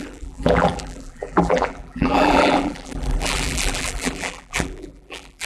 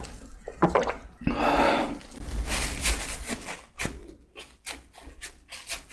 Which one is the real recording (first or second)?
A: second